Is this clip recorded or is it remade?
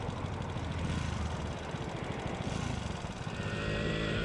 recorded